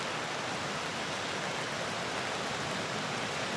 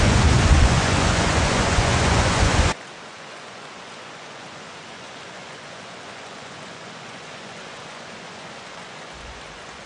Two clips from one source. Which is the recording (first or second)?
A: first